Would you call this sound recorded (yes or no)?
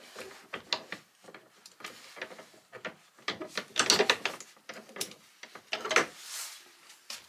yes